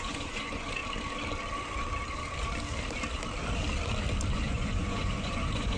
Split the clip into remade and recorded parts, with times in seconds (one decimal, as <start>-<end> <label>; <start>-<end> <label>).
0.0-0.8 remade; 0.8-4.3 recorded; 4.3-5.8 remade